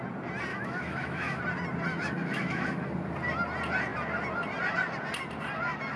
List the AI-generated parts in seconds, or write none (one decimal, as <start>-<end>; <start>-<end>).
0.5-1.4; 1.9-2.8